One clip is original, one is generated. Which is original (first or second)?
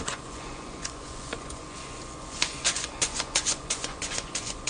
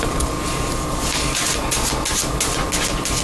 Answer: second